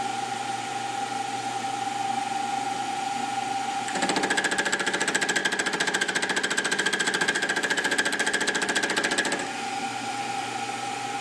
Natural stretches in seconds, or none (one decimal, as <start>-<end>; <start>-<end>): 0.0-11.2